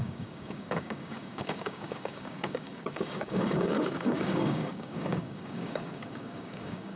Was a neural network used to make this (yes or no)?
yes